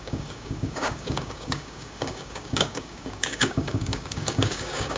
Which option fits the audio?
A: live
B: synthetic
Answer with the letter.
B